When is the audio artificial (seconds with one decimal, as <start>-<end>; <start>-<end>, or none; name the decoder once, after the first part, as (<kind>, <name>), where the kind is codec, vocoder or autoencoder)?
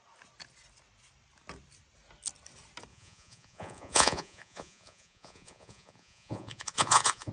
2.9-7.3 (vocoder, Vocos)